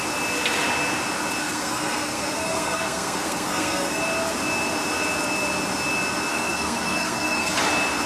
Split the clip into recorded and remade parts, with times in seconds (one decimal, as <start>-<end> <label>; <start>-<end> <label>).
0.0-1.4 recorded; 1.4-4.0 remade; 4.0-6.3 recorded; 6.3-7.5 remade; 7.5-8.1 recorded